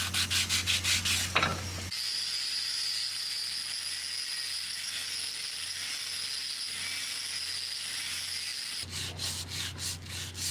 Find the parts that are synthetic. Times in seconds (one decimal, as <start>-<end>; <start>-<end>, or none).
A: none